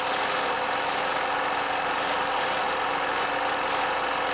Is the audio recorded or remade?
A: recorded